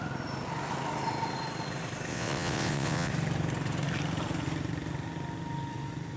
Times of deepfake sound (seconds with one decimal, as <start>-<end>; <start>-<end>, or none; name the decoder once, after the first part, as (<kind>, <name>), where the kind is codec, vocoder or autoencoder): 2.1-3.1 (vocoder, WaveNeXt)